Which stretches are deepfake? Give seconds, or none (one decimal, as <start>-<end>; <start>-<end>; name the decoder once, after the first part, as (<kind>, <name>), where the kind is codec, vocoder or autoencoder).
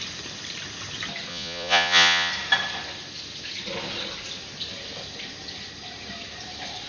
1.3-2.3 (vocoder, Vocos)